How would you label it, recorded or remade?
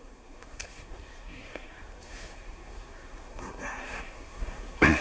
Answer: remade